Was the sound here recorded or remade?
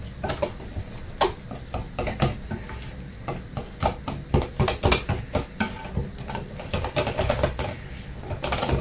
recorded